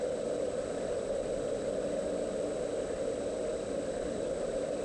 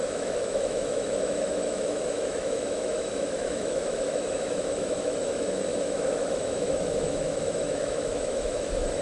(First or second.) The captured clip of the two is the first